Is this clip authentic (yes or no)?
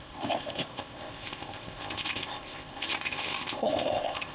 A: no